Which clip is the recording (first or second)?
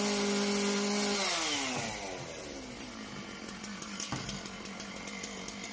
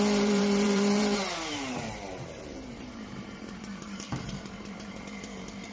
first